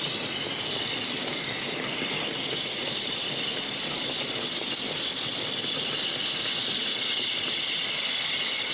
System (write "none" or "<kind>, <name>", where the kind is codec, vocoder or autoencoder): none